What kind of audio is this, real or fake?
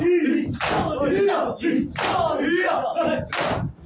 real